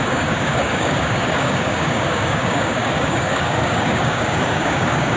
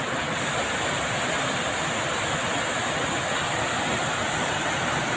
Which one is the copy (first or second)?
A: first